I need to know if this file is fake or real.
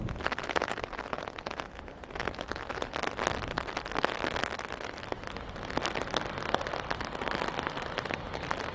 real